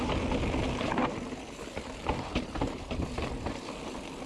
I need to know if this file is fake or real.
real